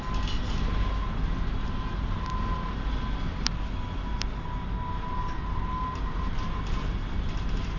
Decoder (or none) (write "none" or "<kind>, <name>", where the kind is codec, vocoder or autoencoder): none